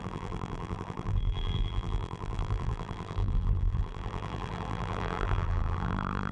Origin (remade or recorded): remade